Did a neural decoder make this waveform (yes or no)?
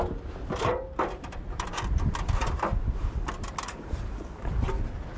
no